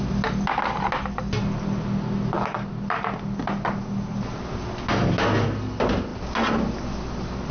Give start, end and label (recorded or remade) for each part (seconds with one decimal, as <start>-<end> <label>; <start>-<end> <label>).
0.0-7.5 recorded